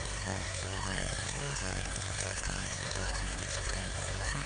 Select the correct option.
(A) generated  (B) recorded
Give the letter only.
A